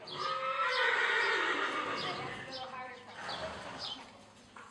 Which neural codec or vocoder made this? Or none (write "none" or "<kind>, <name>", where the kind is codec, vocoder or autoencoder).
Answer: none